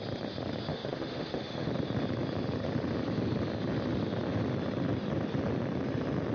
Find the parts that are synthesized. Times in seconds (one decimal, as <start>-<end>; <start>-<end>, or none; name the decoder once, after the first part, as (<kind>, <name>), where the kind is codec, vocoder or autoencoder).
0.7-1.7 (autoencoder, DAC-VAE)